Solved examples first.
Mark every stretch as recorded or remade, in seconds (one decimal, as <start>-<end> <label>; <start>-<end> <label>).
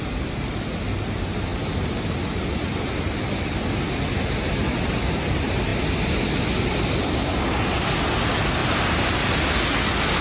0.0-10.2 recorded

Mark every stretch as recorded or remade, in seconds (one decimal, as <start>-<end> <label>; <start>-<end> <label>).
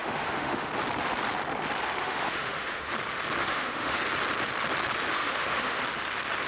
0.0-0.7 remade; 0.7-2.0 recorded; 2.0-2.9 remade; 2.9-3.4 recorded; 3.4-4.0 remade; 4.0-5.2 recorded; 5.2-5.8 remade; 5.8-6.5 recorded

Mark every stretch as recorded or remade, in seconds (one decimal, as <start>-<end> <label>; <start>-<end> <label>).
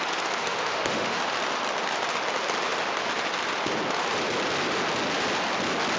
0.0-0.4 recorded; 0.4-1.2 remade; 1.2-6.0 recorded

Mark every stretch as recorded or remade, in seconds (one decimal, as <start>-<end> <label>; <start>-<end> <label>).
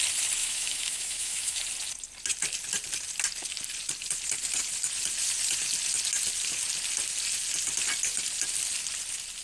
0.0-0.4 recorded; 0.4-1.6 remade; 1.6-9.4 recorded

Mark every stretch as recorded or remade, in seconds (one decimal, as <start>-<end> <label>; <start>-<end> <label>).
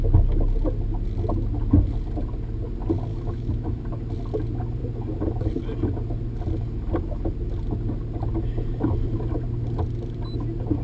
0.0-3.1 recorded; 3.1-3.8 remade; 3.8-10.8 recorded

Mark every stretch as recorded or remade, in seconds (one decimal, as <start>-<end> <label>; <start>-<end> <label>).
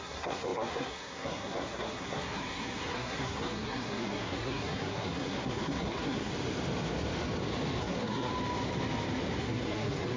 0.0-6.3 remade; 6.3-7.8 recorded; 7.8-8.3 remade; 8.3-9.4 recorded; 9.4-10.2 remade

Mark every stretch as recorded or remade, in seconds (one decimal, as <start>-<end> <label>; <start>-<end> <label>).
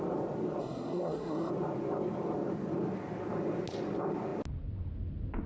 0.0-0.6 recorded; 0.6-1.5 remade; 1.5-5.5 recorded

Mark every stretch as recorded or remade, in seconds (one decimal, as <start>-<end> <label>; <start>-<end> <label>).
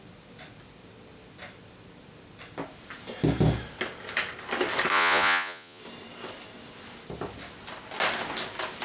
0.0-4.9 recorded; 4.9-5.8 remade; 5.8-8.8 recorded